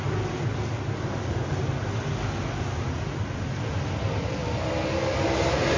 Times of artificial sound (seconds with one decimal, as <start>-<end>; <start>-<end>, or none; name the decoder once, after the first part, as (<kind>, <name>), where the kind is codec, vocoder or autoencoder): none